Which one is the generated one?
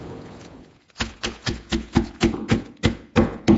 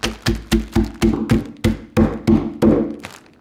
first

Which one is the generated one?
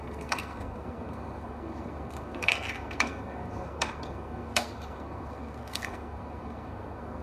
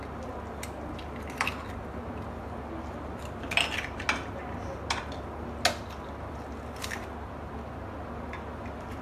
first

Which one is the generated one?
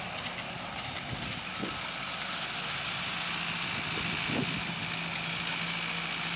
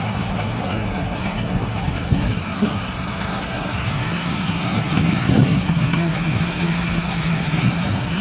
second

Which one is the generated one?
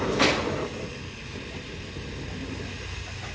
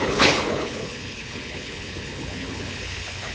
second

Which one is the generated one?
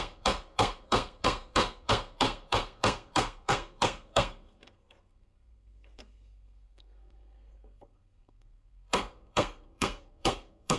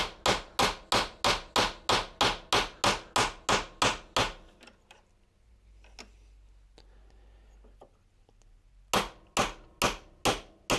first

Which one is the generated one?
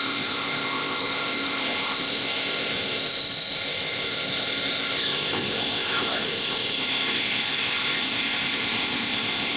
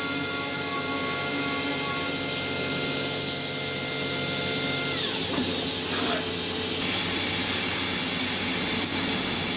first